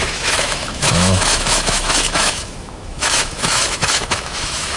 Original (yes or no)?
no